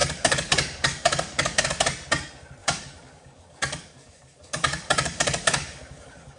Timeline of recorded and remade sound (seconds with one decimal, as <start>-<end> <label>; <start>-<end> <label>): 0.0-1.8 remade; 1.8-2.6 recorded; 2.6-6.4 remade